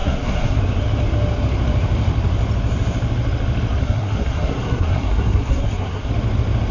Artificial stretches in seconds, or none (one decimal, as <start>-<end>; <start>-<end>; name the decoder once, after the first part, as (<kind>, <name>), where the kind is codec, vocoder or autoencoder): 0.0-0.6 (codec, SNAC); 3.8-6.1